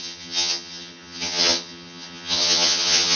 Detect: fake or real fake